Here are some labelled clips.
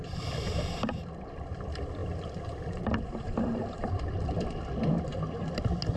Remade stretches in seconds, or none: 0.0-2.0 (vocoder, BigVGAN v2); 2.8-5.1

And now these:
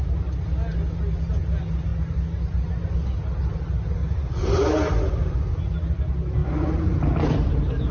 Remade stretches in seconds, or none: none

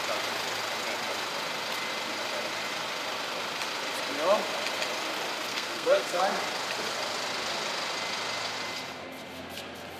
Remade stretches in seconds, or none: 5.5-6.2 (codec, SNAC)

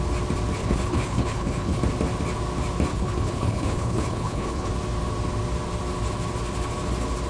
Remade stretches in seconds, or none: 0.6-1.8 (codec, HILCodec); 2.9-4.7